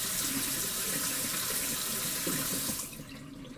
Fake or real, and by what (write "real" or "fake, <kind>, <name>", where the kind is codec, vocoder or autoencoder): real